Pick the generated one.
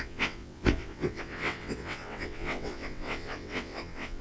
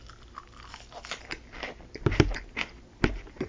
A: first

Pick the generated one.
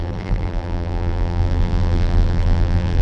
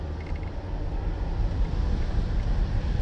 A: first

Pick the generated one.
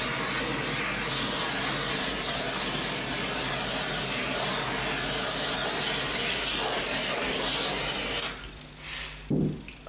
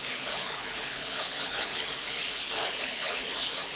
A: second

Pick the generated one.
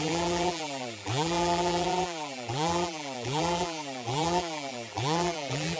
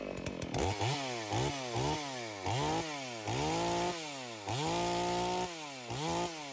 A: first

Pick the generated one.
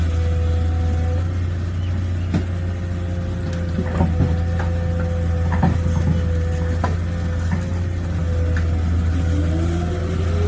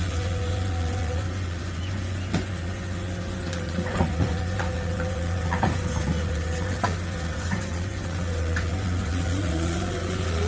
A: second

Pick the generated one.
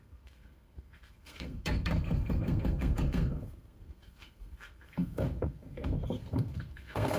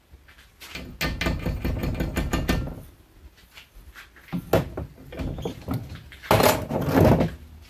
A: first